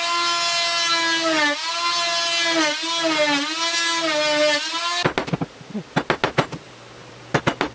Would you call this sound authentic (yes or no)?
yes